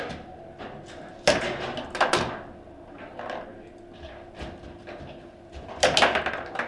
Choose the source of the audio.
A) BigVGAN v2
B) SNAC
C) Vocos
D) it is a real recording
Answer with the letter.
D